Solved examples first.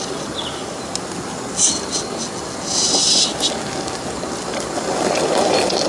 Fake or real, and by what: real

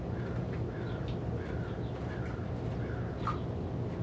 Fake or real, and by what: real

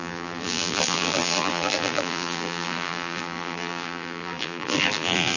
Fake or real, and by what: fake, vocoder, BigVGAN v2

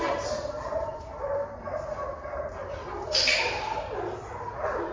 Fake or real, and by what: fake, vocoder, BigVGAN v2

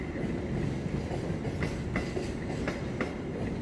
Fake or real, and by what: real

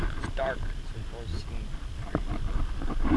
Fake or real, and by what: real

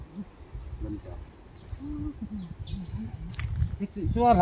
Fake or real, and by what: real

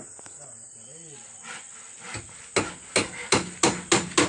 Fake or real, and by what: real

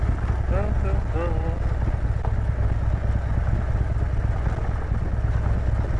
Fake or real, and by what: real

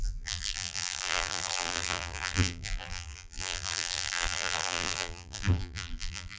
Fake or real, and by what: fake, vocoder, BigVGAN v2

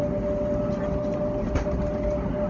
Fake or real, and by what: real